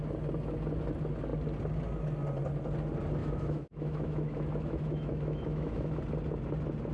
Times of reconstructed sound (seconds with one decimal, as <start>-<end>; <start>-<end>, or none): 3.2-6.0